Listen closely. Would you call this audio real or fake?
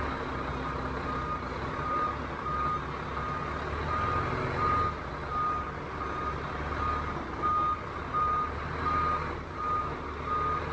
real